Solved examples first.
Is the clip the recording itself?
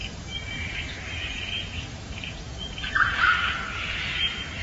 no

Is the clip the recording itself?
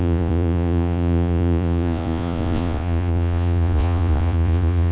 no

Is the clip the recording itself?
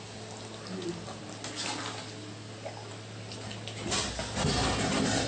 yes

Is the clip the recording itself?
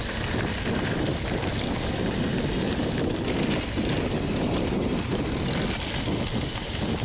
yes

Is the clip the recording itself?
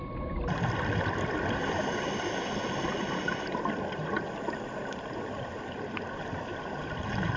yes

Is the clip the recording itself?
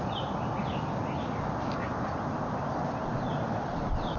yes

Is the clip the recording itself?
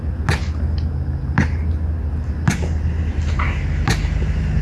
yes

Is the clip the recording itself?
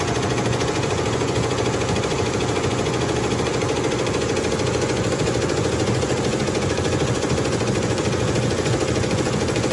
no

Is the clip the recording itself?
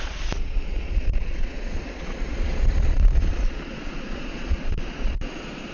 no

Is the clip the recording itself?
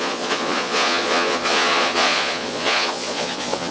no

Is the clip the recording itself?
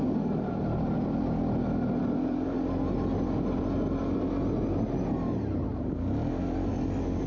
yes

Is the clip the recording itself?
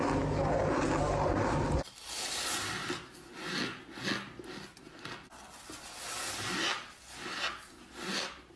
yes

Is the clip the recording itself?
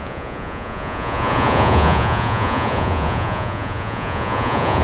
no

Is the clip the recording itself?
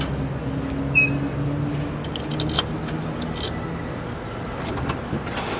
yes